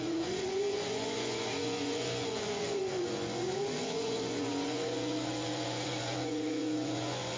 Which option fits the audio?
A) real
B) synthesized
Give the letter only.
B